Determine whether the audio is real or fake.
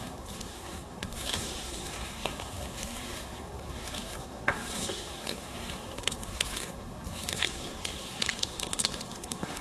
fake